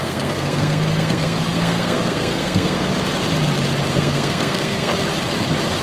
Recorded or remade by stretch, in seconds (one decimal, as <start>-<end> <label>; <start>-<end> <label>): 0.0-2.9 remade; 2.9-3.9 recorded; 3.9-4.9 remade; 4.9-5.8 recorded